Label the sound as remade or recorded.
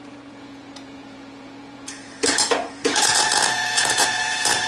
remade